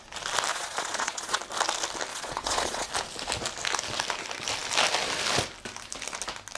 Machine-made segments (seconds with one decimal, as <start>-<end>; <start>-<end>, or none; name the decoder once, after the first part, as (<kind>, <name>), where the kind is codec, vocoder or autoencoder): 0.5-1.4 (vocoder, Vocos); 2.1-2.9